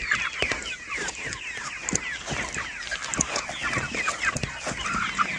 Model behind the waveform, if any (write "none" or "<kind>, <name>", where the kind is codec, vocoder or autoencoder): none